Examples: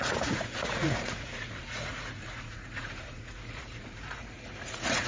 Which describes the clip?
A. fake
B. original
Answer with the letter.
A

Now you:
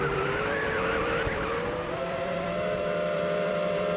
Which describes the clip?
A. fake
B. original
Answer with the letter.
A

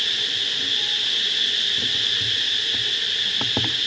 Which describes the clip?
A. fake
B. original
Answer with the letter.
B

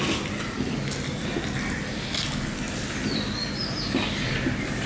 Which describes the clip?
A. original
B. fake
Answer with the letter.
A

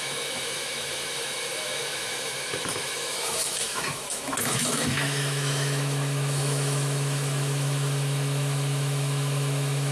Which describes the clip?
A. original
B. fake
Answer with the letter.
B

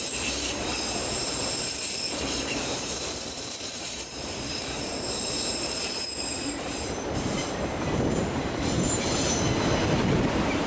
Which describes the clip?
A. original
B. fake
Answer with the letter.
B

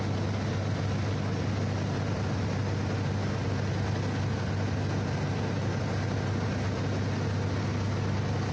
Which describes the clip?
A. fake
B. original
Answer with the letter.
B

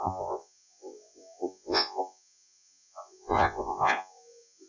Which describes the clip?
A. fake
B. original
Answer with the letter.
A